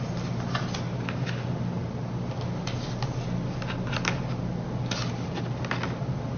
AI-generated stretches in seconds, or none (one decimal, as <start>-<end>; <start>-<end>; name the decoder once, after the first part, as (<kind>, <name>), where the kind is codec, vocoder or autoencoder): none

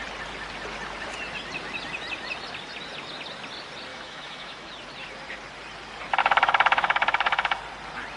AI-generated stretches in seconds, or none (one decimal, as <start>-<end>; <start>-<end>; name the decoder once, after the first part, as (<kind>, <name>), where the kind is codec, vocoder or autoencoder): 3.9-4.7 (autoencoder, DAC-VAE); 6.2-7.6

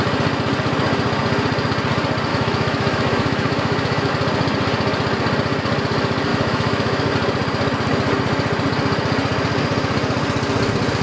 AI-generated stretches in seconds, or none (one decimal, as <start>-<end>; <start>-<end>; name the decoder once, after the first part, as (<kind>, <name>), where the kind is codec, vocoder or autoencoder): 2.3-4.1 (autoencoder, DAC-VAE); 6.3-7.1